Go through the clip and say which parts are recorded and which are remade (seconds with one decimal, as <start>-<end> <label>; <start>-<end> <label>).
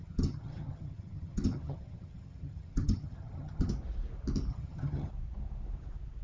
0.0-3.7 remade; 3.7-4.5 recorded; 4.5-5.1 remade; 5.1-6.2 recorded